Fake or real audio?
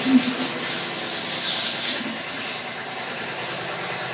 real